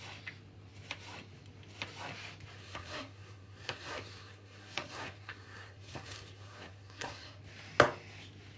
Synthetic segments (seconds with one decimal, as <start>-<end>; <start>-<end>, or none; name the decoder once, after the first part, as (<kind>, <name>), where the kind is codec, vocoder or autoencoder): 2.6-7.4 (codec, SNAC)